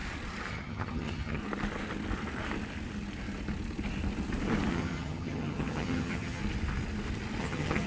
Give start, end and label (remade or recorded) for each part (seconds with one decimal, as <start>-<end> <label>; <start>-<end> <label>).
0.0-0.5 recorded; 0.5-1.4 remade; 1.4-4.7 recorded; 4.7-6.4 remade; 6.4-7.4 recorded; 7.4-7.9 remade